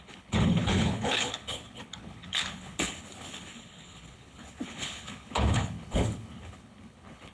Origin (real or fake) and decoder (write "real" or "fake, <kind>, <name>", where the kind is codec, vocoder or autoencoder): fake, codec, HILCodec